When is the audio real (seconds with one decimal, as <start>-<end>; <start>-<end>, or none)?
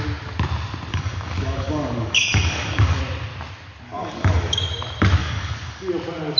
0.0-0.9; 3.0-4.0; 4.7-5.2; 5.9-6.4